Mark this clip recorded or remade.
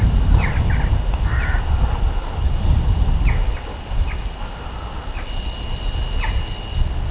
recorded